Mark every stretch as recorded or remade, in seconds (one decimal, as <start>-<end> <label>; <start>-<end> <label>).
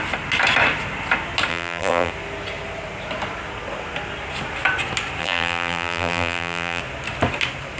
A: 0.0-1.5 recorded; 1.5-2.1 remade; 2.1-5.2 recorded; 5.2-6.8 remade; 6.8-7.8 recorded